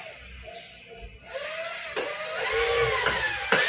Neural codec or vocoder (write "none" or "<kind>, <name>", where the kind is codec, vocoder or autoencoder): none